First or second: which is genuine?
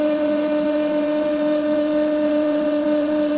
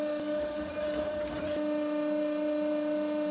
second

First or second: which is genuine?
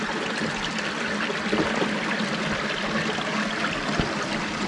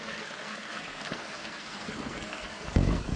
first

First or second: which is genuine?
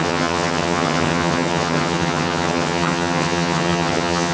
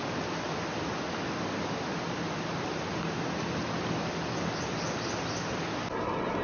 second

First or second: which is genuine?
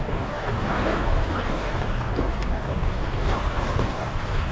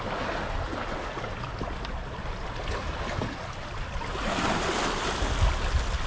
second